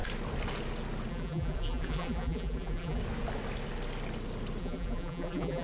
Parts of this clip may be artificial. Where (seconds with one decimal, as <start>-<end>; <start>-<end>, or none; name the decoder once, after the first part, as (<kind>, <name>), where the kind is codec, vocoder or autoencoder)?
1.1-3.0 (vocoder, BigVGAN v2); 4.6-5.6